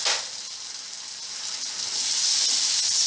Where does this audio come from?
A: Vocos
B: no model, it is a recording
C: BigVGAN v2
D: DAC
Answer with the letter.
B